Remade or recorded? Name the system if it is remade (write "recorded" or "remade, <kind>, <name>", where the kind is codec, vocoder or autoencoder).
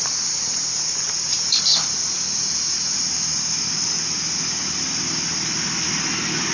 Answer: recorded